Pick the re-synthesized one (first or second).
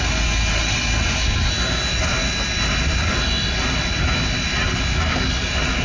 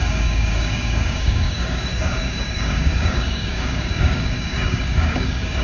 second